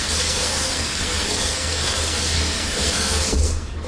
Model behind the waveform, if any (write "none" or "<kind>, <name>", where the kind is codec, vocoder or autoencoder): codec, SNAC